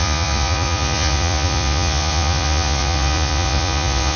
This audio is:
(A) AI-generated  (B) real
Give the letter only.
A